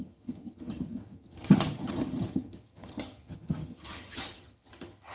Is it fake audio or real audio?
fake